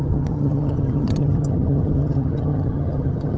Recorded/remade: remade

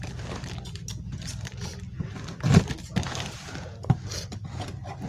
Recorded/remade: recorded